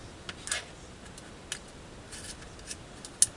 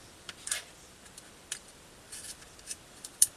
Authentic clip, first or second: first